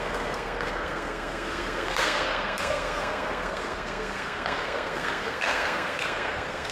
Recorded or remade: remade